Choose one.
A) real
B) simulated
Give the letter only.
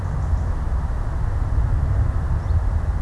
A